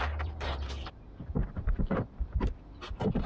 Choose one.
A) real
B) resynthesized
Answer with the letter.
B